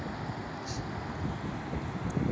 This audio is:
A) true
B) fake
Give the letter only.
A